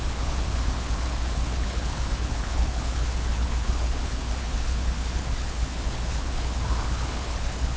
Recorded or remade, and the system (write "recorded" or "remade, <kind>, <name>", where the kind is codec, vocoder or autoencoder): remade, codec, HILCodec